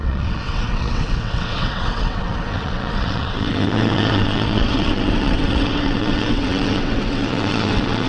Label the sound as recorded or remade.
remade